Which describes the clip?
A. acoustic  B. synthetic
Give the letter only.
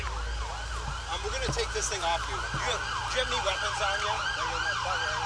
A